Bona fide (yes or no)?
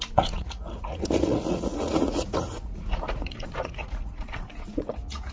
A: no